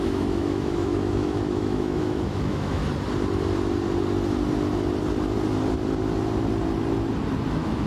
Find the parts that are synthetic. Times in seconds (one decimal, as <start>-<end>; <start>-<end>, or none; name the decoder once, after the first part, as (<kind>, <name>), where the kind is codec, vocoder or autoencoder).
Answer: 0.0-2.8 (autoencoder, DAC-VAE); 7.5-7.9